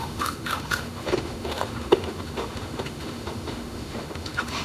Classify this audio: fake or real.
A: fake